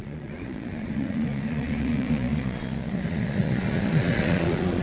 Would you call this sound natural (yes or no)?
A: no